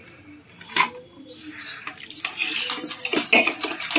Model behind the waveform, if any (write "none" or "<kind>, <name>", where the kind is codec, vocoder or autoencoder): none